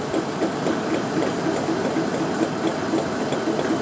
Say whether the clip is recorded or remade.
recorded